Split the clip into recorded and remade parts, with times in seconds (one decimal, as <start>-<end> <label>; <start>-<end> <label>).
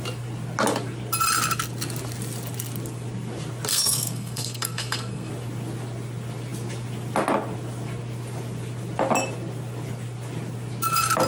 0.0-3.7 recorded; 3.7-5.3 remade; 5.3-11.3 recorded